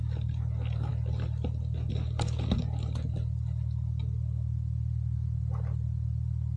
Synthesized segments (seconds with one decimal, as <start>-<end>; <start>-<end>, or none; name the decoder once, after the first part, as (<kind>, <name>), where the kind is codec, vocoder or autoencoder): none